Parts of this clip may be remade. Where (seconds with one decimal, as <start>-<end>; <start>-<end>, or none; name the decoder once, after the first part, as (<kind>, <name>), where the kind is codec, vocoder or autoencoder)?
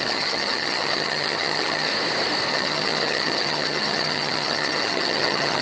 0.0-1.9 (vocoder, HiFi-GAN); 2.5-5.6